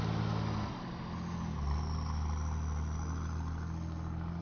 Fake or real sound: real